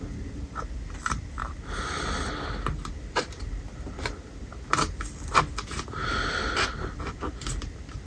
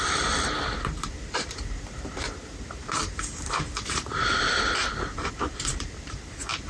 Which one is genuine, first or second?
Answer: first